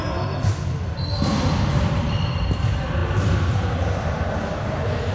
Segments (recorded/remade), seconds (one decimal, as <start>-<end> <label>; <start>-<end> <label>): 0.0-1.7 recorded; 1.7-2.4 remade; 2.4-5.1 recorded